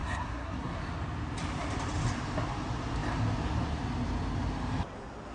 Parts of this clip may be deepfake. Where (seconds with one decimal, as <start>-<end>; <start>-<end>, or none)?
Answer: 0.0-0.8